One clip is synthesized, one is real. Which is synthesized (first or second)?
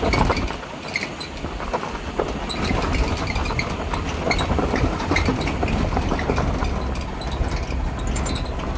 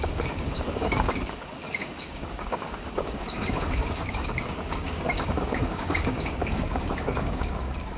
second